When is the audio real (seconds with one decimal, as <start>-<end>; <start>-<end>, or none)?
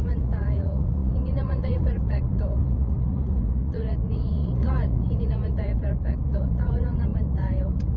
none